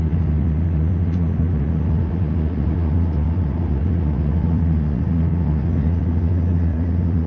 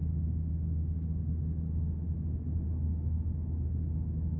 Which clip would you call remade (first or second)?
first